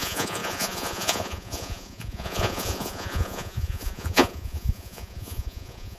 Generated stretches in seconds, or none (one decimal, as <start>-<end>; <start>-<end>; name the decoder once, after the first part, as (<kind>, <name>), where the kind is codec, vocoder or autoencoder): 0.0-6.0 (vocoder, Vocos)